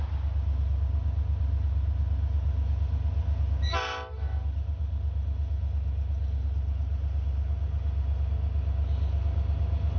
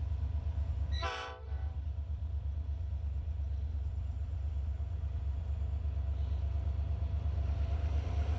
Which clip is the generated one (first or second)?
second